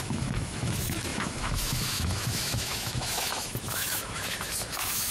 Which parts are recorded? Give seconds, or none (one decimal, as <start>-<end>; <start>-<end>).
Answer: none

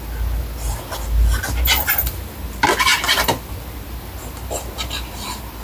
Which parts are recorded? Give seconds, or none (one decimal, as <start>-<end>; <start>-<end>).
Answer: 0.0-5.6

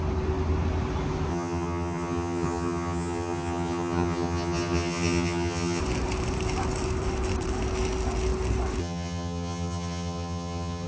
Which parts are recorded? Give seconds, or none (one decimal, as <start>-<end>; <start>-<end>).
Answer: 0.0-1.3; 5.8-8.8

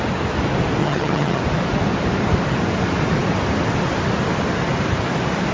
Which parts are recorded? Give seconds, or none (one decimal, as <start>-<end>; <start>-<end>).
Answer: 0.0-0.8; 1.4-5.5